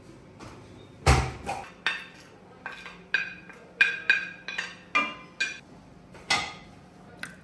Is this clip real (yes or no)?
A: yes